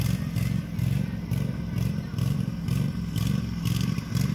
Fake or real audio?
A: real